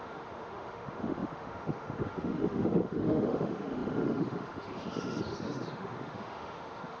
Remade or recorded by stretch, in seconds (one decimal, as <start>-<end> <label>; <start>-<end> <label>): 0.0-7.0 remade